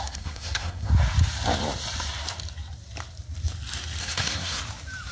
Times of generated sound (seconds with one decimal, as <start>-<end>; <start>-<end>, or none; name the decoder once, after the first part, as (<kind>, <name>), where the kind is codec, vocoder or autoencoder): 0.0-0.9 (codec, SNAC); 4.0-4.6